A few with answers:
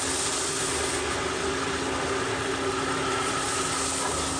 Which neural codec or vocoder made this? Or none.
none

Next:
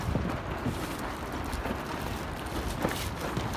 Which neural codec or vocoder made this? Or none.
none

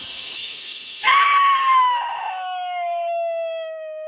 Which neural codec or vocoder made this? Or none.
autoencoder, DAC-VAE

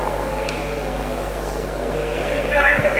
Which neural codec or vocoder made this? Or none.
codec, SNAC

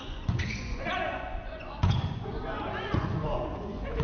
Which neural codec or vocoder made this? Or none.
vocoder, Vocos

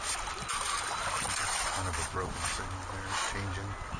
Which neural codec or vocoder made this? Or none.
none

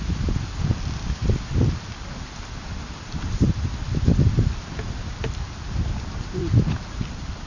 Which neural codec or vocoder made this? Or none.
none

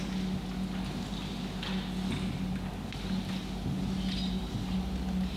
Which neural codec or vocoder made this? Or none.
none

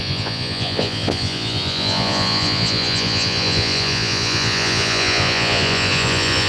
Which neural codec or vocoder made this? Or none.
vocoder, Vocos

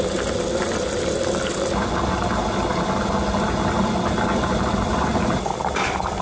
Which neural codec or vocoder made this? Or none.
none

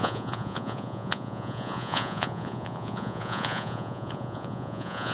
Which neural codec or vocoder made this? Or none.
vocoder, Vocos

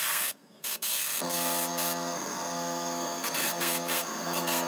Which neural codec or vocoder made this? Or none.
codec, SNAC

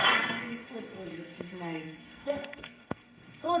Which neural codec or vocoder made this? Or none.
codec, SNAC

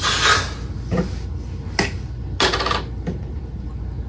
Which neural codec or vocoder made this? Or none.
none